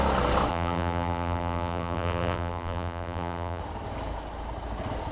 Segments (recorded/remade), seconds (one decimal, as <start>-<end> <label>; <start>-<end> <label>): 0.0-0.5 recorded; 0.5-3.6 remade; 3.6-5.1 recorded